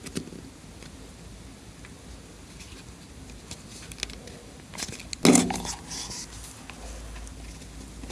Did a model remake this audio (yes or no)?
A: no